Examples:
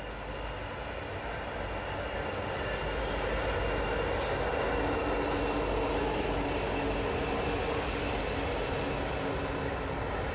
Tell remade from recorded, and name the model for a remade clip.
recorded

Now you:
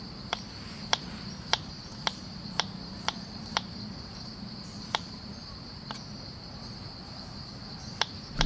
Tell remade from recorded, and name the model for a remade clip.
remade, vocoder, BigVGAN v2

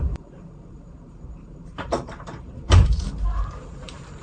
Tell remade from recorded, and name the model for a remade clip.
remade, vocoder, BigVGAN v2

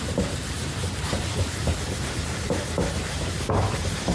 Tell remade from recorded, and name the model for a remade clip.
remade, vocoder, BigVGAN v2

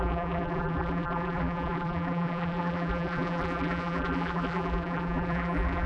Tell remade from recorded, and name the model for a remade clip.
remade, vocoder, BigVGAN v2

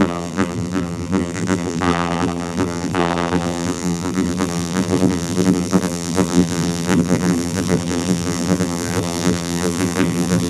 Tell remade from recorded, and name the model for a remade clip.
remade, vocoder, BigVGAN v2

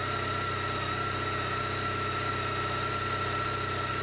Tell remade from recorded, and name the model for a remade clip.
recorded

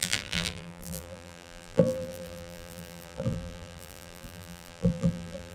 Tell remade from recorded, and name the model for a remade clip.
remade, vocoder, BigVGAN v2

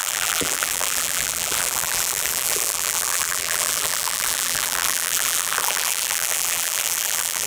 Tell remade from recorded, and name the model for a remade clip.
remade, vocoder, BigVGAN v2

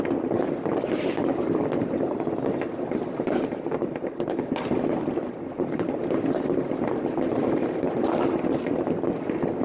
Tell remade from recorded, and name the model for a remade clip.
remade, vocoder, BigVGAN v2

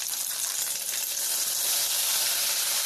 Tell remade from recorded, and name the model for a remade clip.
remade, vocoder, BigVGAN v2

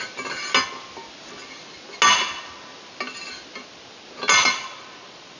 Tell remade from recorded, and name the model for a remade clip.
recorded